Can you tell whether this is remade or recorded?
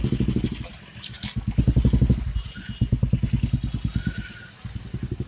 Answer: recorded